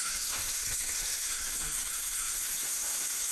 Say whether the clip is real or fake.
fake